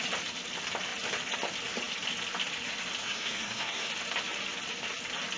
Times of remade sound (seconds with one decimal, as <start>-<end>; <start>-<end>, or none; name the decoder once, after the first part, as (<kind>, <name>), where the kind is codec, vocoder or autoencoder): 3.0-3.9 (codec, SNAC)